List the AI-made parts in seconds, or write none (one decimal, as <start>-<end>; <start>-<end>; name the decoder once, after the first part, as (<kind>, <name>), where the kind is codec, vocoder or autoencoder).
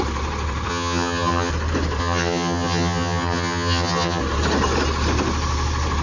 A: 0.7-1.5 (vocoder, HiFi-GAN); 2.0-4.2